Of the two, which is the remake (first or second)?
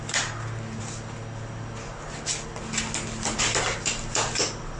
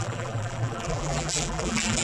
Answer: second